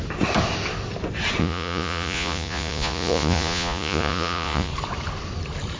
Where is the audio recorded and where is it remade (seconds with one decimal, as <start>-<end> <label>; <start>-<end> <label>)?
0.0-1.4 recorded; 1.4-4.7 remade; 4.7-5.8 recorded